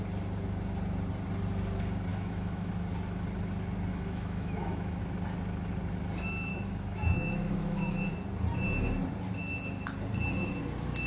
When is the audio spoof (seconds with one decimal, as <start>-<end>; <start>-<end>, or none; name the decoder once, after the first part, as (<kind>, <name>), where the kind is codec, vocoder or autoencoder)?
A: 2.1-2.7 (autoencoder, DAC-VAE); 3.9-5.0; 6.5-8.0